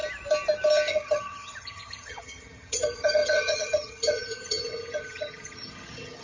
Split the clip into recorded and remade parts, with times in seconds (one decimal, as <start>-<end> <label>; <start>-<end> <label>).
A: 0.0-0.9 recorded; 0.9-6.2 remade